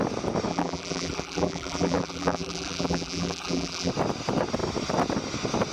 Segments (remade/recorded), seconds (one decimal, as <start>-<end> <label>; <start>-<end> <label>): 0.0-0.5 recorded; 0.5-3.9 remade; 3.9-5.7 recorded